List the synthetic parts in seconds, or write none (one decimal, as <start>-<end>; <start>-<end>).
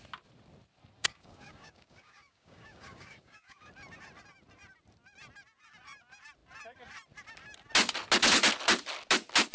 1.0-3.7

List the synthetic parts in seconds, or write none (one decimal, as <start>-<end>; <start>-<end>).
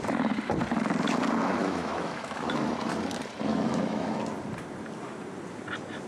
1.6-2.7; 3.5-4.2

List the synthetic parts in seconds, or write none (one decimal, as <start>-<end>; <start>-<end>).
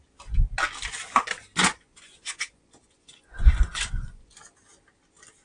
1.6-4.4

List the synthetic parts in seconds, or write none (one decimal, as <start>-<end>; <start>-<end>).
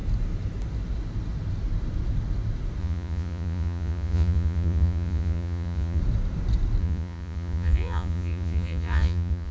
2.8-6.0; 6.8-9.5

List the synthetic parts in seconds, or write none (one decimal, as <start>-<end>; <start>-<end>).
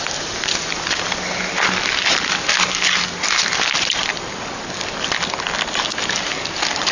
none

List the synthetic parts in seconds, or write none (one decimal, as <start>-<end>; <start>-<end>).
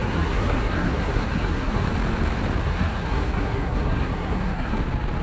0.0-1.9; 2.6-4.8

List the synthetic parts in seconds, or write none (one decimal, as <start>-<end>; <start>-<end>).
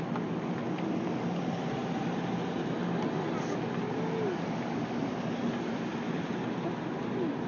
none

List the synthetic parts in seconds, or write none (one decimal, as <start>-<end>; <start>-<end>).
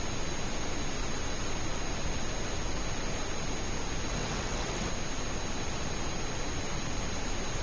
4.1-4.9